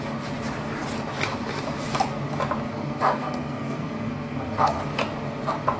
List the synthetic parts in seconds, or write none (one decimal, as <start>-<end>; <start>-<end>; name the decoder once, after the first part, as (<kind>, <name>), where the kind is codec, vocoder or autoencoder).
2.7-4.8 (codec, SNAC)